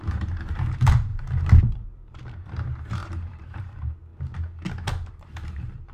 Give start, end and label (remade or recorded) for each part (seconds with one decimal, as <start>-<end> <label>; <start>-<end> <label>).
0.0-1.1 remade; 1.1-1.6 recorded; 1.6-4.1 remade; 4.1-5.1 recorded; 5.1-5.9 remade